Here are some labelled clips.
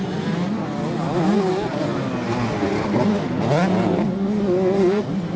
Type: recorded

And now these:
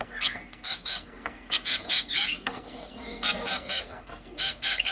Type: remade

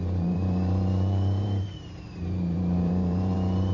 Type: remade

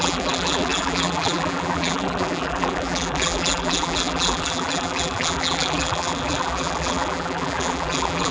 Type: remade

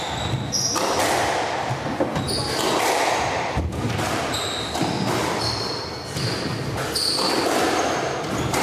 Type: recorded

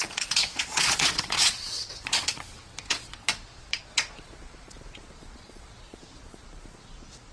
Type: remade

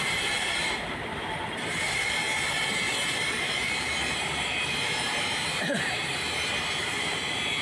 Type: remade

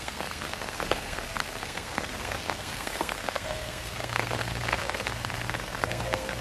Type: remade